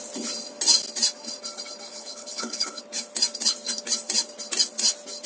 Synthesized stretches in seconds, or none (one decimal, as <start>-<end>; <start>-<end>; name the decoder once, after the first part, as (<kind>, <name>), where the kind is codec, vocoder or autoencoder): 1.9-2.8 (codec, HILCodec)